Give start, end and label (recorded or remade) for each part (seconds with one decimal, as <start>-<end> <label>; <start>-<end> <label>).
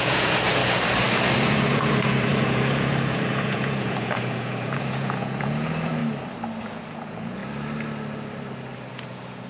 0.0-0.6 remade; 0.6-1.4 recorded; 1.4-6.0 remade; 6.0-6.6 recorded; 6.6-7.4 remade; 7.4-8.9 recorded; 8.9-9.5 remade